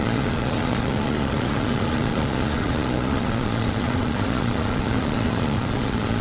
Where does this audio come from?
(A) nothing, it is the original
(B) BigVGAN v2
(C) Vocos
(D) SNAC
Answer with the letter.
C